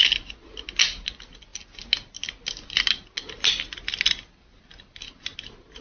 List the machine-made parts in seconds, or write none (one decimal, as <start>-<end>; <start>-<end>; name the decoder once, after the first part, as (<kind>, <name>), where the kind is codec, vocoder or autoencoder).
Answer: none